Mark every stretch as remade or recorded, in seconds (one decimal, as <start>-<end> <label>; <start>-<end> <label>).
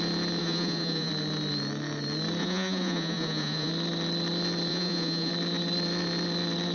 0.0-0.4 recorded; 0.4-1.1 remade; 1.1-2.4 recorded; 2.4-3.7 remade; 3.7-4.7 recorded; 4.7-5.3 remade; 5.3-6.7 recorded